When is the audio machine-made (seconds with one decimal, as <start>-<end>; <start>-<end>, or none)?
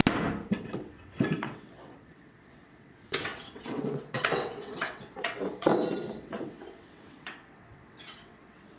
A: 0.5-5.7; 6.2-8.8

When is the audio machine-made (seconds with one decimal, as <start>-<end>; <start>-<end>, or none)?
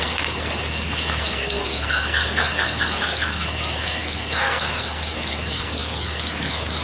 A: 0.0-6.8